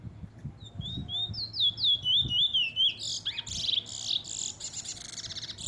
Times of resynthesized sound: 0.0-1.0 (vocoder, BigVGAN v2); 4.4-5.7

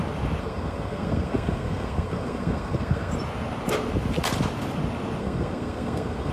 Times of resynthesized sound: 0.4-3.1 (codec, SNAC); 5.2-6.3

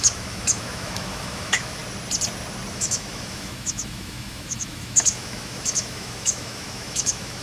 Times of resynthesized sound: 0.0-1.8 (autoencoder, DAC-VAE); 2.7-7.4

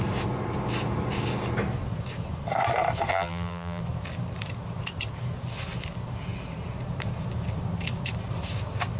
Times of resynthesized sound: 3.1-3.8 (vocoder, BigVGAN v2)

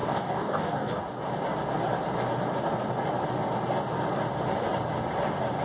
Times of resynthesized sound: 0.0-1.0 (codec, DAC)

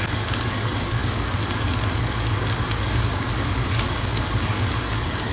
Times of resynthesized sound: 0.0-5.3 (codec, DAC)